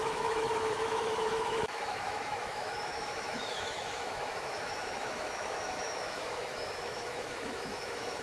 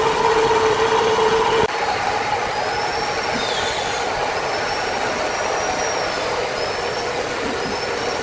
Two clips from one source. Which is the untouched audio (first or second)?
second